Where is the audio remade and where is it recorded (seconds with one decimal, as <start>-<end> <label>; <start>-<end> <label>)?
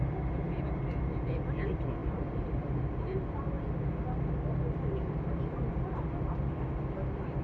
0.0-7.4 remade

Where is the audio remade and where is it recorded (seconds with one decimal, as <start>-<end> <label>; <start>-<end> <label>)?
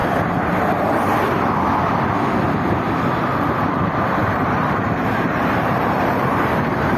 0.0-3.7 recorded; 3.7-7.0 remade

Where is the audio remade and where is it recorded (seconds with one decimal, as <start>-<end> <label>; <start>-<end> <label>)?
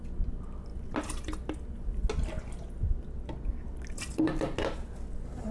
0.0-5.5 recorded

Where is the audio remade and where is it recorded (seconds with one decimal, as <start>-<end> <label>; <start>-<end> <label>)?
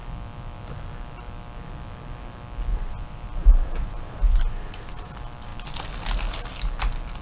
0.0-2.7 recorded; 2.7-5.1 remade; 5.1-7.2 recorded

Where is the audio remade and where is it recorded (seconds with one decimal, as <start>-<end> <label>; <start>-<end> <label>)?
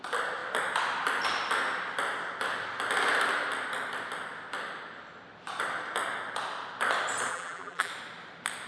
0.0-7.3 recorded; 7.3-7.9 remade; 7.9-8.7 recorded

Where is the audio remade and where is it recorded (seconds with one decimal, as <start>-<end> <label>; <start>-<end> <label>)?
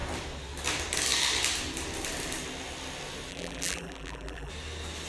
0.0-3.3 recorded; 3.3-4.5 remade; 4.5-5.1 recorded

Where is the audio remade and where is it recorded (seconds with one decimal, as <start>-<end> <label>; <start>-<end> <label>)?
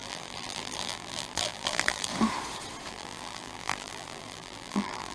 0.0-2.1 remade; 2.1-2.9 recorded; 2.9-5.1 remade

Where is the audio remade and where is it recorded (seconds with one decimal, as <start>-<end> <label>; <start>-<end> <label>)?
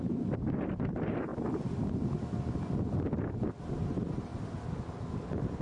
0.0-1.3 remade; 1.3-3.7 recorded; 3.7-4.3 remade; 4.3-5.0 recorded; 5.0-5.6 remade